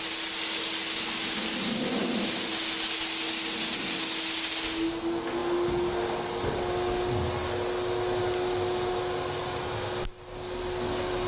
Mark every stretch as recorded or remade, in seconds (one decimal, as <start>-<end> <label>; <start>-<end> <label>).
0.0-11.3 recorded

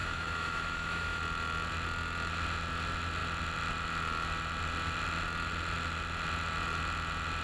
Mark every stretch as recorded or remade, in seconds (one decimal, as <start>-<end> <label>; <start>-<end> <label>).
0.0-1.2 remade; 1.2-7.4 recorded

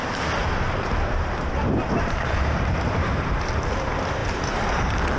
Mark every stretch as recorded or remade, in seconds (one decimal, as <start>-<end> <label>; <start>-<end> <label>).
0.0-0.4 recorded; 0.4-3.5 remade; 3.5-4.2 recorded; 4.2-4.8 remade; 4.8-5.2 recorded

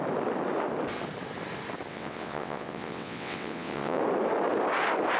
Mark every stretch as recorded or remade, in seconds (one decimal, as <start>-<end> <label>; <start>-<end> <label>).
0.0-1.9 recorded; 1.9-4.0 remade; 4.0-5.2 recorded

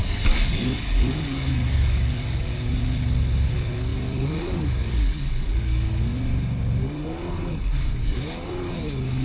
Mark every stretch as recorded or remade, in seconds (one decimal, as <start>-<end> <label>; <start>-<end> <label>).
0.0-2.8 remade; 2.8-3.5 recorded; 3.5-6.1 remade; 6.1-6.8 recorded; 6.8-9.2 remade

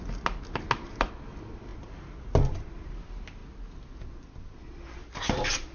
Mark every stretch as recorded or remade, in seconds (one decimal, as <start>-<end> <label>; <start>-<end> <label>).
0.0-5.7 recorded